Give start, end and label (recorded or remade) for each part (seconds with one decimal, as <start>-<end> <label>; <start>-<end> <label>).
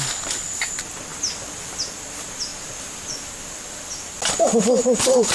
0.0-5.3 recorded